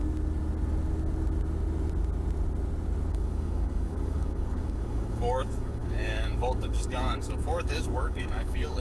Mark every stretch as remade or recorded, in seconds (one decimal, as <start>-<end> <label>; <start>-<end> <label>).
0.0-3.1 recorded; 3.1-8.8 remade